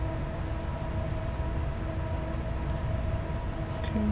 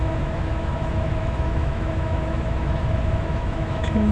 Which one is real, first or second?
first